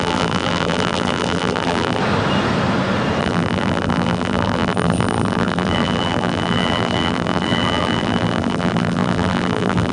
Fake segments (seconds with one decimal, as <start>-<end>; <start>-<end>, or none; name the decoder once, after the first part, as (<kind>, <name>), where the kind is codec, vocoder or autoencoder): 0.0-2.0 (vocoder, BigVGAN v2); 3.2-9.9